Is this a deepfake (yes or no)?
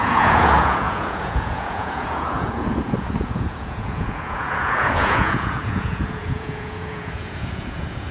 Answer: yes